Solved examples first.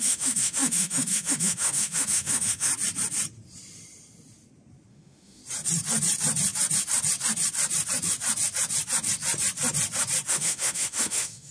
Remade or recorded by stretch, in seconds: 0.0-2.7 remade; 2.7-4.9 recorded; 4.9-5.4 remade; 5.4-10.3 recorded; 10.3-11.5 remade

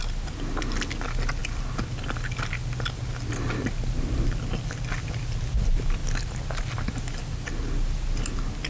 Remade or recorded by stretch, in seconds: 0.0-8.7 recorded

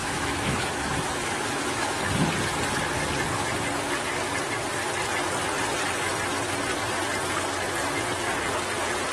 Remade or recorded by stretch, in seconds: 0.0-2.0 remade; 2.0-9.1 recorded

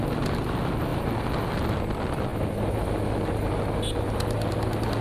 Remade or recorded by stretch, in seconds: 0.0-5.0 recorded

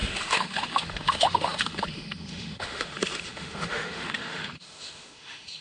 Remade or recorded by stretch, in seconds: 0.0-5.6 remade